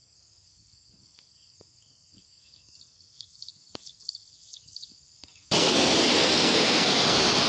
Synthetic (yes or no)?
yes